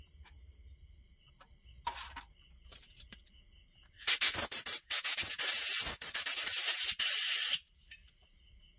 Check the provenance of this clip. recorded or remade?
remade